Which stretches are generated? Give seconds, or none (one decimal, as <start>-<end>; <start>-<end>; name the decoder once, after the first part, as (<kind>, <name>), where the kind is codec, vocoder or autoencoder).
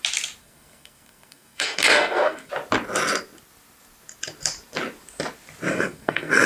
0.4-2.5 (codec, SNAC); 5.7-6.5